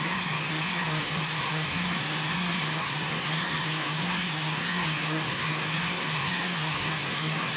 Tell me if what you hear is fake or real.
fake